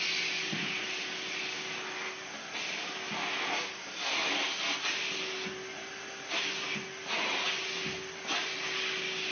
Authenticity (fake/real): real